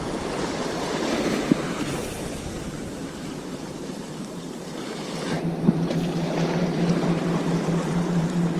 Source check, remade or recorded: remade